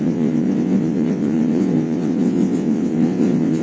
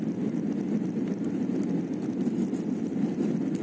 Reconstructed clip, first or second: first